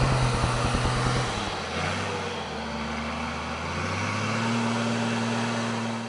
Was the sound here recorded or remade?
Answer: recorded